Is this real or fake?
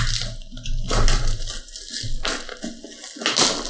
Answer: real